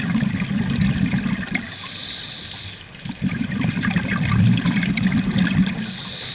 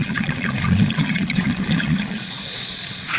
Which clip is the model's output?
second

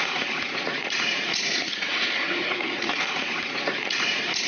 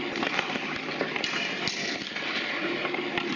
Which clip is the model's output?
first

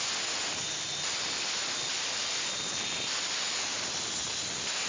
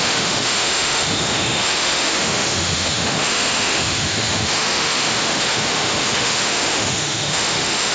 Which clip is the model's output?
second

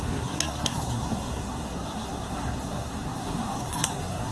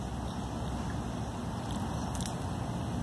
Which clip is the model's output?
first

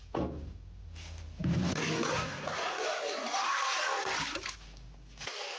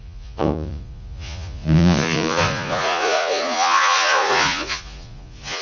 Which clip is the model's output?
second